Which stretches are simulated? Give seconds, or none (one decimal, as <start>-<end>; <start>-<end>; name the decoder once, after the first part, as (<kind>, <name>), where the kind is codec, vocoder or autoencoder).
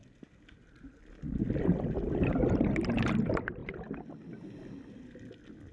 none